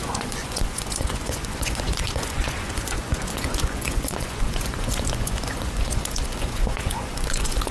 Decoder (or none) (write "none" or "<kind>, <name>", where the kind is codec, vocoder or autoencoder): vocoder, Vocos